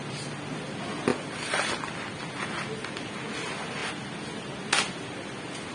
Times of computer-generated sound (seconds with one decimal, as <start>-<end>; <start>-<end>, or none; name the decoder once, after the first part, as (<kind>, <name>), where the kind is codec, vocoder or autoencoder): none

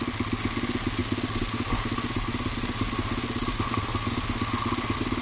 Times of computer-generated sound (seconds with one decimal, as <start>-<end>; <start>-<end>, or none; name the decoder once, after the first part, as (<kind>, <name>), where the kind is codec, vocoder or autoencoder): none

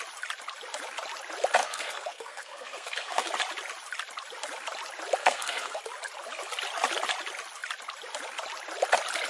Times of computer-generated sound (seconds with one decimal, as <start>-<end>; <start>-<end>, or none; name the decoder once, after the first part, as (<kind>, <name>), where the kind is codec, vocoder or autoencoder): 1.6-3.3 (codec, SNAC); 5.2-5.8

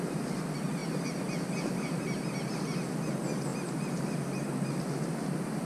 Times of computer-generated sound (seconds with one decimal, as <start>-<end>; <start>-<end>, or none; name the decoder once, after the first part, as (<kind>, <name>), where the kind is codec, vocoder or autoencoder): none

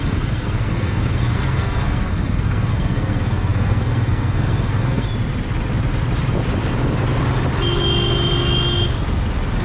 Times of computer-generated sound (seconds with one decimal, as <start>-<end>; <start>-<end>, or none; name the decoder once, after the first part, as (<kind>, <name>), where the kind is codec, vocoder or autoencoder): 0.0-5.1 (codec, SNAC)